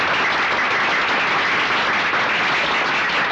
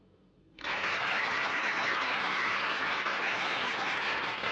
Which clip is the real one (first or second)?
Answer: first